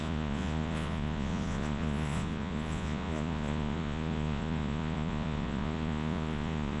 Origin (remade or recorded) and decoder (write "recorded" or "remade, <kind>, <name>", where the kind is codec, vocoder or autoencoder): remade, vocoder, Vocos